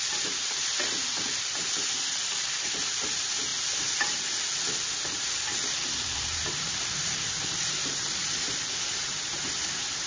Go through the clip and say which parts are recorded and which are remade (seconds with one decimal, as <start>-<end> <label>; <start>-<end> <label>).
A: 0.0-3.5 remade; 3.5-6.0 recorded; 6.0-10.1 remade